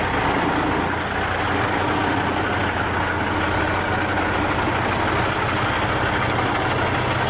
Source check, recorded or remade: recorded